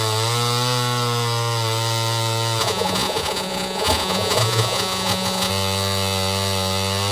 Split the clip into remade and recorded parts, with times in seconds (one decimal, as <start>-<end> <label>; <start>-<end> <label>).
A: 0.0-2.6 recorded; 2.6-5.5 remade; 5.5-7.1 recorded